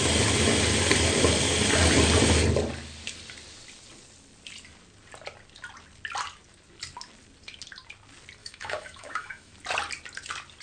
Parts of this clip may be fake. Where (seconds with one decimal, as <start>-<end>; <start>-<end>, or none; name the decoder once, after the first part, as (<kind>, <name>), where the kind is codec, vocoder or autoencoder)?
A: 8.4-9.5 (autoencoder, DAC-VAE)